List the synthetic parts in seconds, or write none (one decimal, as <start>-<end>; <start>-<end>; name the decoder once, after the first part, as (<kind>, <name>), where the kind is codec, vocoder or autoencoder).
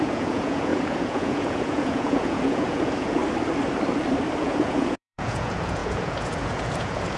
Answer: 0.0-3.2 (vocoder, Vocos); 4.4-7.2